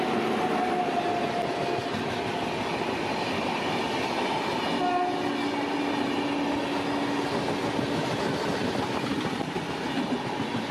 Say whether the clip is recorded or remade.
recorded